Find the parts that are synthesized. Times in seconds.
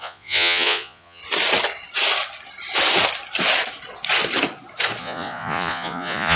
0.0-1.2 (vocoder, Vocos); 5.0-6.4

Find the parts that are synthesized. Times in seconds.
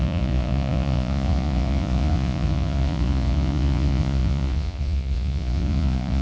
0.0-6.2 (vocoder, Vocos)